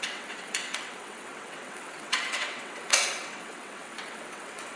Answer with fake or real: fake